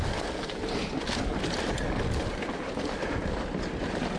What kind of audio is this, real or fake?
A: real